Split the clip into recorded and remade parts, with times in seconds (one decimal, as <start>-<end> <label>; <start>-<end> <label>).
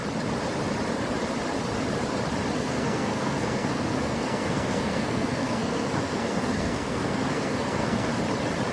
0.0-2.6 recorded; 2.6-8.1 remade; 8.1-8.7 recorded